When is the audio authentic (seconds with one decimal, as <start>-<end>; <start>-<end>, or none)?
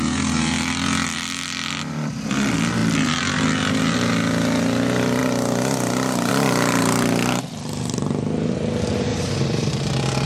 0.0-9.1; 9.7-10.3